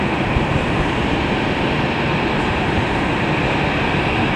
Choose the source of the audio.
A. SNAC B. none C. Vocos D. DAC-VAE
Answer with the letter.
B